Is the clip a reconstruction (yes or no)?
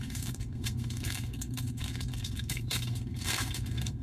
yes